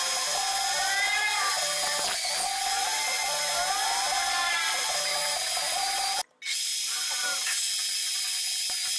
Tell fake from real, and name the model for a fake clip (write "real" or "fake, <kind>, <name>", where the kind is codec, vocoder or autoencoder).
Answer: real